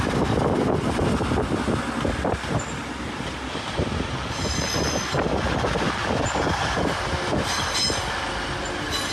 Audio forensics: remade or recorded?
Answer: recorded